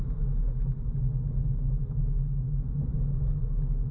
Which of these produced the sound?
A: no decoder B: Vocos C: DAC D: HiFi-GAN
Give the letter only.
A